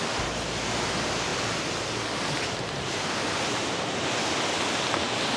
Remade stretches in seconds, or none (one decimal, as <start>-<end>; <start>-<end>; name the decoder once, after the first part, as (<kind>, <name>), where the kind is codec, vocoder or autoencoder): none